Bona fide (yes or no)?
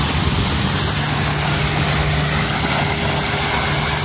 yes